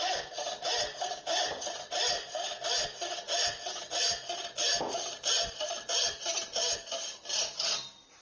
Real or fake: real